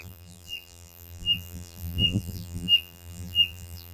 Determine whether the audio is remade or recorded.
remade